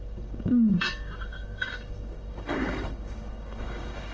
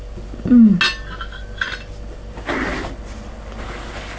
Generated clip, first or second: first